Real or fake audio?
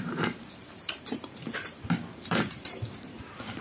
fake